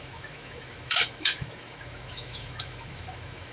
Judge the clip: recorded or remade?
remade